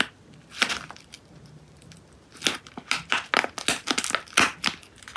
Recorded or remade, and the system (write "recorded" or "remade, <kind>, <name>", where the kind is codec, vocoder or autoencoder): recorded